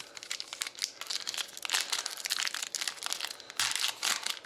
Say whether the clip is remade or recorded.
recorded